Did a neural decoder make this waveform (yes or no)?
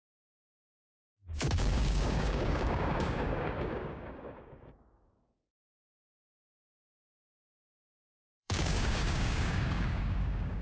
yes